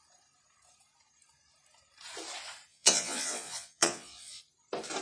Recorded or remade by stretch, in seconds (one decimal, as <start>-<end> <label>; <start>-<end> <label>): 0.0-2.7 recorded; 2.7-4.4 remade; 4.4-5.0 recorded